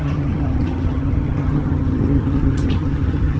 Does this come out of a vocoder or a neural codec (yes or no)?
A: yes